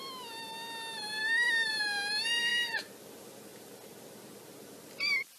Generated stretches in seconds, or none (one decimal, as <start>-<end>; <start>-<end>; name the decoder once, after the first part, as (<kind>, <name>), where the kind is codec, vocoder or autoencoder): 1.2-1.7 (autoencoder, DAC-VAE)